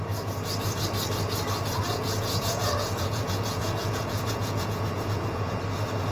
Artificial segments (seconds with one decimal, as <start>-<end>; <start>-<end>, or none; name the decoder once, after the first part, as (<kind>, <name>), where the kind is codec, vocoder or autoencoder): 1.9-5.6 (vocoder, Vocos)